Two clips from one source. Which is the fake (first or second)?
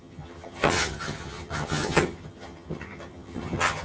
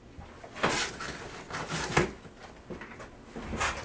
first